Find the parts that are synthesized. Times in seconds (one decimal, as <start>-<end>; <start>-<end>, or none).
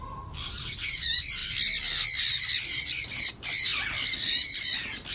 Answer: 0.0-3.7; 4.3-5.1